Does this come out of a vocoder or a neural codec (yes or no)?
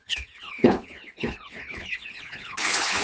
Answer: yes